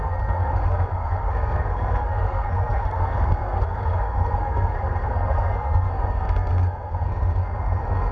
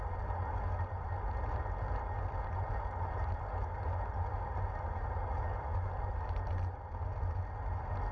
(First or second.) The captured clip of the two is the second